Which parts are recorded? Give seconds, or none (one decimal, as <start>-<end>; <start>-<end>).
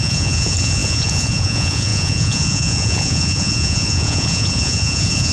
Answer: none